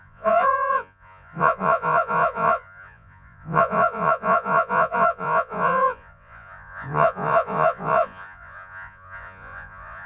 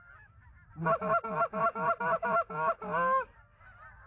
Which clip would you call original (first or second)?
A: second